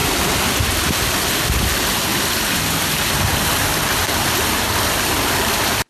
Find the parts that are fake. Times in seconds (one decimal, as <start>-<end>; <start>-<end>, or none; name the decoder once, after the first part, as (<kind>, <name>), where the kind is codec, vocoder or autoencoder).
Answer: 2.1-3.2 (vocoder, BigVGAN v2); 4.0-5.9